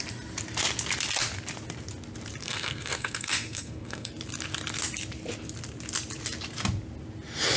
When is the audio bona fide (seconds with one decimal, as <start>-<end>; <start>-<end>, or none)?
0.0-2.4; 4.1-7.6